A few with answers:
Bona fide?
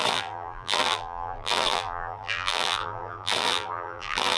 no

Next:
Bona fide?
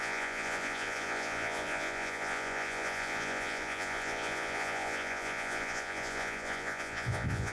no